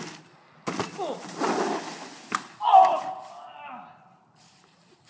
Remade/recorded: recorded